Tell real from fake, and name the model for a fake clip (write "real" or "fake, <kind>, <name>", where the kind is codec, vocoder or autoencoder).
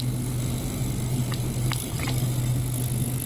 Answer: fake, vocoder, BigVGAN v2